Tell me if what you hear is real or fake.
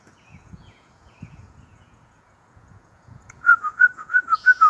fake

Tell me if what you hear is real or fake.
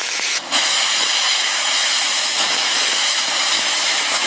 fake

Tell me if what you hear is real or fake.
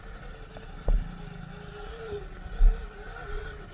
real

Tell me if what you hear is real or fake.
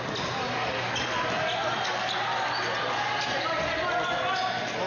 real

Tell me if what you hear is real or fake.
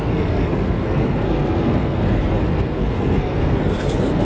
fake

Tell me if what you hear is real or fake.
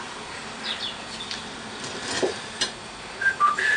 real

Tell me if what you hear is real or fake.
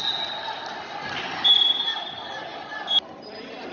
real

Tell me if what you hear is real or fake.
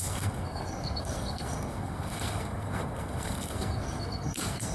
fake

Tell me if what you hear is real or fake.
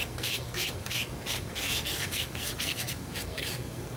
fake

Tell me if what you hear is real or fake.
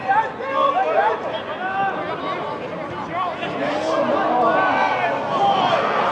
real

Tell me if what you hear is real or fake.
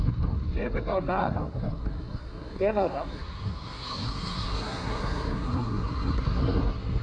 fake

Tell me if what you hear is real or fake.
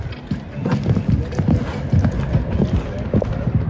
real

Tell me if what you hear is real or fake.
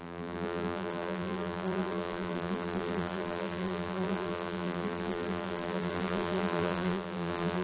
fake